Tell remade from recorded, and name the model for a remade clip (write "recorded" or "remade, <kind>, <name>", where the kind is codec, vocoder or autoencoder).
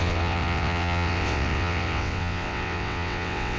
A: remade, vocoder, WaveNeXt